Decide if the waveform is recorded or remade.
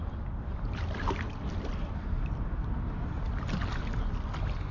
recorded